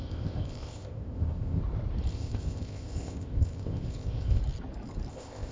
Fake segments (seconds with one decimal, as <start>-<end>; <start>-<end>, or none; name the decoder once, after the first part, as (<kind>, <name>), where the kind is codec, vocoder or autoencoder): 0.0-1.6 (codec, ZipCodec); 2.1-4.4; 5.1-5.5